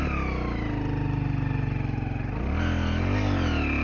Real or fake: real